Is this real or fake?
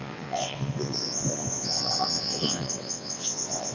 fake